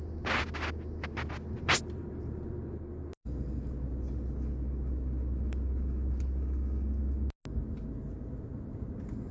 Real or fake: real